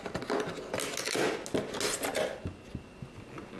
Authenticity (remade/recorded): recorded